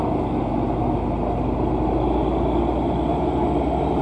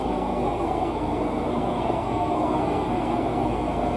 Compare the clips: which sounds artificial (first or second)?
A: second